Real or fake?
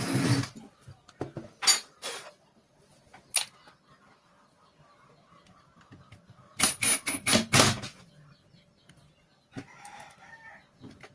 real